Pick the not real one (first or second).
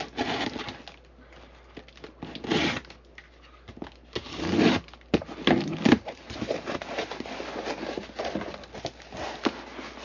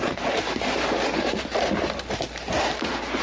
second